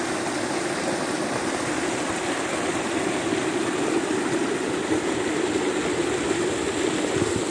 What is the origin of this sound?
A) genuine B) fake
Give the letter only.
A